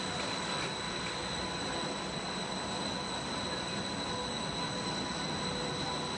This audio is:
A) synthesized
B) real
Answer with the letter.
B